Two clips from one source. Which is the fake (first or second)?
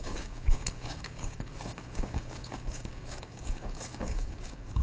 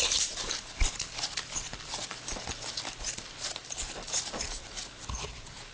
first